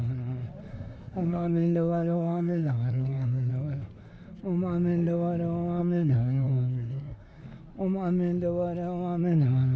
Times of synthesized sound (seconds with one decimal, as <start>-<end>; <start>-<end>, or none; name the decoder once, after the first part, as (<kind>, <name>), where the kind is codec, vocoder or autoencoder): 0.7-3.5 (codec, SNAC); 5.8-7.4